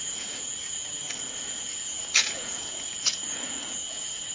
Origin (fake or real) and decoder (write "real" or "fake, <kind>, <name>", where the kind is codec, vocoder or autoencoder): fake, vocoder, Vocos